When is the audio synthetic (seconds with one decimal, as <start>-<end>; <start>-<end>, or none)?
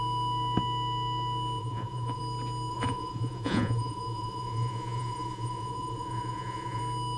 1.6-2.2; 2.7-6.8